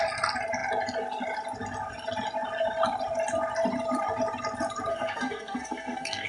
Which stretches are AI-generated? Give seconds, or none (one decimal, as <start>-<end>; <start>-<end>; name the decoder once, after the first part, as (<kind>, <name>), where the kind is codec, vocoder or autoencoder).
4.9-6.3 (codec, SNAC)